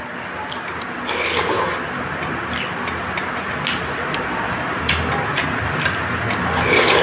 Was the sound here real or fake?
real